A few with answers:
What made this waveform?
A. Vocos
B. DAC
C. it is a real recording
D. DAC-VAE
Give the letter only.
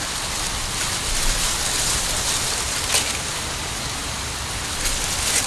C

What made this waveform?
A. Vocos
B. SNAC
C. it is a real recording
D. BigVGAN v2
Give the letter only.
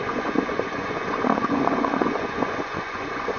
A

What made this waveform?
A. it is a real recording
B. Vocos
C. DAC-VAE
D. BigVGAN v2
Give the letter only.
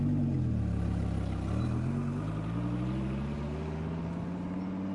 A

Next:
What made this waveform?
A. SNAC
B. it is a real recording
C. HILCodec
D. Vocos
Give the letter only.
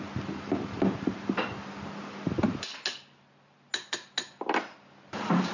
B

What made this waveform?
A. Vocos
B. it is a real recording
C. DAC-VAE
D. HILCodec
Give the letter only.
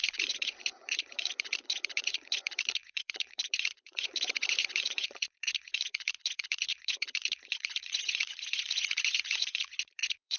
A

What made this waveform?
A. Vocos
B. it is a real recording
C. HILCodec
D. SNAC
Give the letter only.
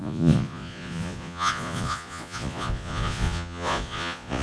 A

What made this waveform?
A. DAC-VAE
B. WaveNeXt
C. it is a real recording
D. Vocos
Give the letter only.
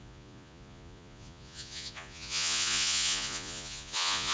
D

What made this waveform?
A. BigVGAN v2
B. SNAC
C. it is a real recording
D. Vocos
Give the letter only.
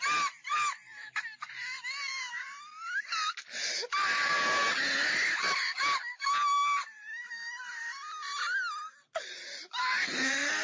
C